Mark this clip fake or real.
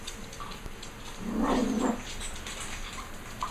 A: real